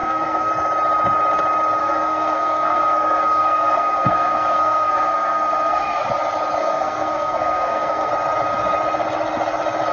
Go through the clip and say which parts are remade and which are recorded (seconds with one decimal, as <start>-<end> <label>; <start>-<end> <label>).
0.0-0.5 remade; 0.5-1.8 recorded; 1.8-6.0 remade; 6.0-6.6 recorded; 6.6-8.1 remade; 8.1-9.9 recorded

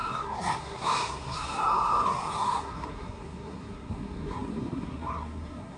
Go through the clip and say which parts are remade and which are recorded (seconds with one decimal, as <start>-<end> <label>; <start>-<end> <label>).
0.0-5.8 remade

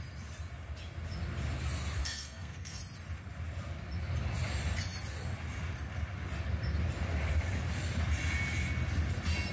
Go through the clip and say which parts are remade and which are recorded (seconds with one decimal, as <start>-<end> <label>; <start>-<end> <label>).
0.0-2.0 recorded; 2.0-2.8 remade; 2.8-9.5 recorded

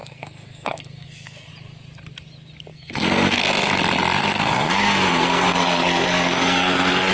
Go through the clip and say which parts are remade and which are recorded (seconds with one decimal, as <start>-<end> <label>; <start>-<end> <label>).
0.0-1.5 remade; 1.5-2.7 recorded; 2.7-3.4 remade; 3.4-4.2 recorded; 4.2-7.1 remade

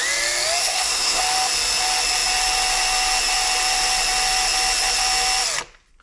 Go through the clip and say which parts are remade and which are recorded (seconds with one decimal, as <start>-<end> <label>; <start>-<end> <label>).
0.0-0.6 recorded; 0.6-1.2 remade; 1.2-6.0 recorded

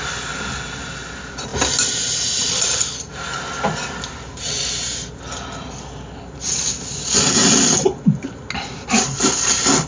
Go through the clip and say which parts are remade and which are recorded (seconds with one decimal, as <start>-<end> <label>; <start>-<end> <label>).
0.0-9.9 recorded